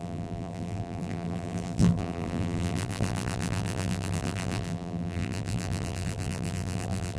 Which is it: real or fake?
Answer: fake